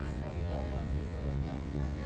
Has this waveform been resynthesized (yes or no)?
yes